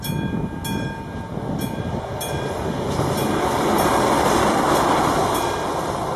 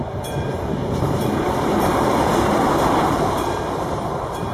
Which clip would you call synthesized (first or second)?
second